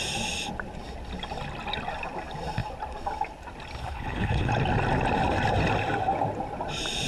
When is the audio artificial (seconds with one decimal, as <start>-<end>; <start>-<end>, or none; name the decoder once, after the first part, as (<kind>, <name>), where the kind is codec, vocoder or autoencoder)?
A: 3.8-4.5 (codec, HILCodec)